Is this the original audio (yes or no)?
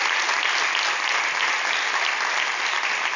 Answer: yes